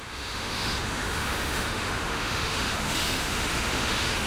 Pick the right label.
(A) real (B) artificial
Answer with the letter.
B